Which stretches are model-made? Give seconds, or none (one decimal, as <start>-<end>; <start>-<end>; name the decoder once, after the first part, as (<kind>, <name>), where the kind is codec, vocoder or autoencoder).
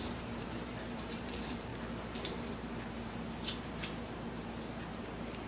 0.0-5.5 (vocoder, BigVGAN v2)